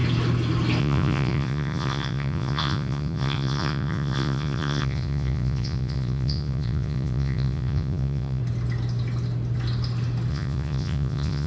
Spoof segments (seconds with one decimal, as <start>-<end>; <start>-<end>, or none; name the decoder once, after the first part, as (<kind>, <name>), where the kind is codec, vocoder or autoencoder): 0.8-8.4 (vocoder, Vocos); 10.3-11.5